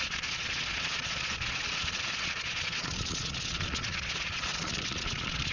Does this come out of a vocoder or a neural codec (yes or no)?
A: yes